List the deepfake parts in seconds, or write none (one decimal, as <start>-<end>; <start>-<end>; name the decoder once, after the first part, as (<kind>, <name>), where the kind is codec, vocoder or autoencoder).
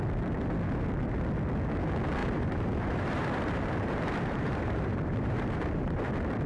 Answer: 2.2-6.1 (vocoder, BigVGAN v2)